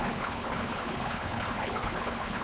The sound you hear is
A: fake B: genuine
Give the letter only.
A